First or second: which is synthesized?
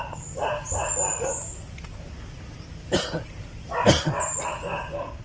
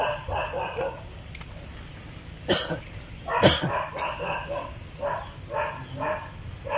second